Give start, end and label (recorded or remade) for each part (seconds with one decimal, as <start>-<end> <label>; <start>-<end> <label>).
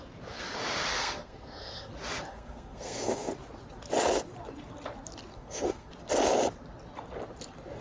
0.0-0.9 recorded; 0.9-1.9 remade; 1.9-2.3 recorded; 2.3-3.3 remade; 3.3-5.3 recorded; 5.3-5.9 remade; 5.9-7.8 recorded